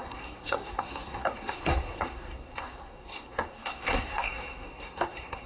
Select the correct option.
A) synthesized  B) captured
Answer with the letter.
A